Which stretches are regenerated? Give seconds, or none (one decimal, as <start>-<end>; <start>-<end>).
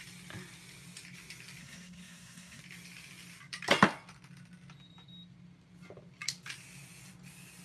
1.6-2.6